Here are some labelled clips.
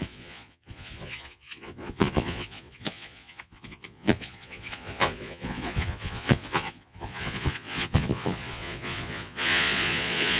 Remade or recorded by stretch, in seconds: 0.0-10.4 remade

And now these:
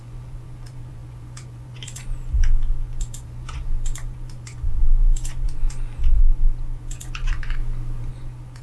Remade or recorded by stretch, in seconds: 0.0-7.6 remade; 7.6-8.1 recorded; 8.1-8.6 remade

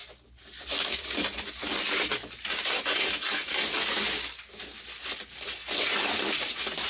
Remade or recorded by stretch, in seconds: 0.0-6.9 recorded

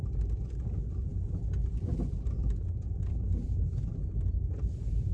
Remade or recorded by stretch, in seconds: 0.0-5.1 recorded

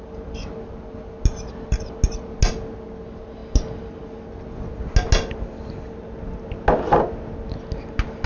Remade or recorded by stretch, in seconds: 0.0-8.3 recorded

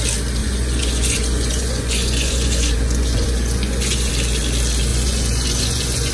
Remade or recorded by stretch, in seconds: 0.0-0.4 recorded; 0.4-4.1 remade; 4.1-4.9 recorded; 4.9-6.1 remade

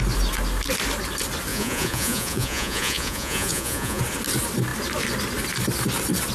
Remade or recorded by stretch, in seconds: 0.0-1.5 recorded; 1.5-4.0 remade; 4.0-6.3 recorded

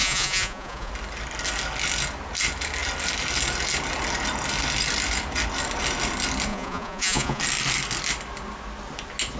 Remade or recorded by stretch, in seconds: 0.0-0.9 remade; 0.9-6.5 recorded; 6.5-7.4 remade; 7.4-9.4 recorded